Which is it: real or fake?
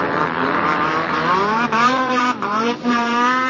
fake